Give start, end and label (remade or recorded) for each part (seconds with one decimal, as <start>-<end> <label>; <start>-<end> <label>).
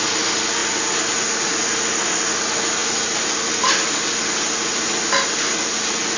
0.0-6.2 recorded